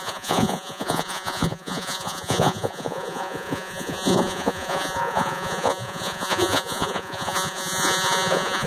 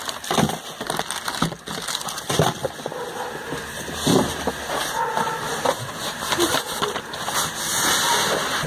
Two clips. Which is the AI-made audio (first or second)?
first